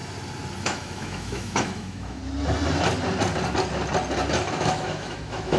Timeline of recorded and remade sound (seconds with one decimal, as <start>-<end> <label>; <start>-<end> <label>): 0.0-0.6 recorded; 0.6-2.2 remade; 2.2-4.5 recorded; 4.5-5.6 remade